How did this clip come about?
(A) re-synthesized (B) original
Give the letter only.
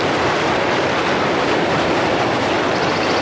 B